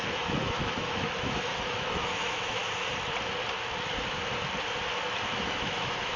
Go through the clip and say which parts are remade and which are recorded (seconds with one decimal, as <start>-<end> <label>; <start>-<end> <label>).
0.0-2.6 remade; 2.6-5.4 recorded; 5.4-6.2 remade